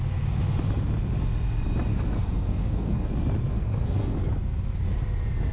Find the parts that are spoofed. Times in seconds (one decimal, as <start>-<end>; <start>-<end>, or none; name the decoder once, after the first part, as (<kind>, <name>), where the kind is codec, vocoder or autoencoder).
1.9-3.1 (codec, SNAC); 3.5-4.3